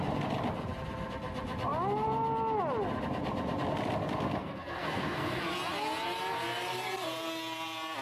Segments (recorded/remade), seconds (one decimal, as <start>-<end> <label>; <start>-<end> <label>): 0.0-4.4 recorded; 4.4-5.4 remade; 5.4-8.0 recorded